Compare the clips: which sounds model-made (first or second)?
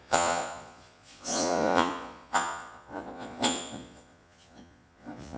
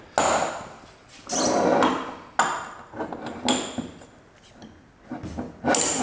first